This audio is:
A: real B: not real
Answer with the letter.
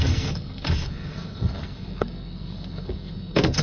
B